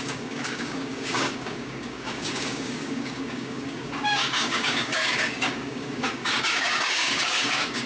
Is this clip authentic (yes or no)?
no